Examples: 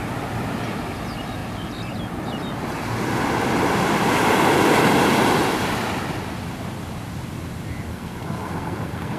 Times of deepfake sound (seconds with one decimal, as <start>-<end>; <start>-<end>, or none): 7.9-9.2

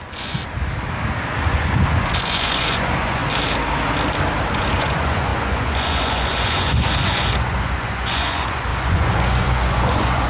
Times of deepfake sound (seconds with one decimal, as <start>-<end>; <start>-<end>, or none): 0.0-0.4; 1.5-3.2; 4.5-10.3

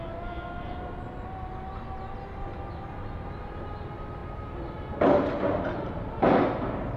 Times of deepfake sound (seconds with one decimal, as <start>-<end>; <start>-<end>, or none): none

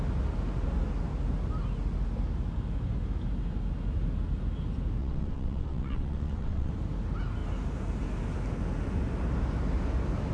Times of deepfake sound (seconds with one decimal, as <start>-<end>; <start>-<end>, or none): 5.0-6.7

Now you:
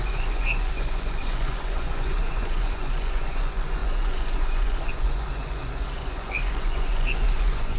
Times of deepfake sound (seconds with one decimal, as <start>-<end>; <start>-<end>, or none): 0.0-7.8

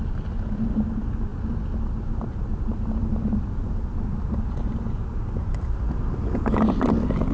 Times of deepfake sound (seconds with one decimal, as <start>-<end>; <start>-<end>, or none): none